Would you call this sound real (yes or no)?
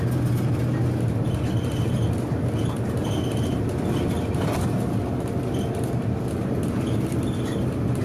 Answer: yes